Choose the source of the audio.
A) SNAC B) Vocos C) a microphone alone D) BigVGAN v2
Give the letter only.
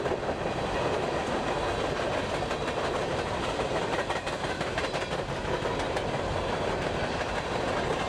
C